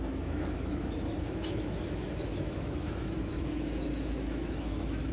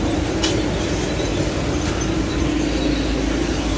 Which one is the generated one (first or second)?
first